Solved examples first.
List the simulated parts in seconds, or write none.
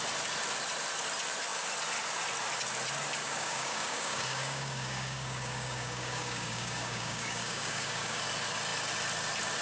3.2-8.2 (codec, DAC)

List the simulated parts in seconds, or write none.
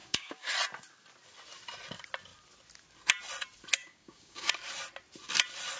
0.0-0.5 (codec, DAC); 3.8-4.5